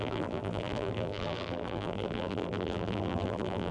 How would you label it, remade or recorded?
remade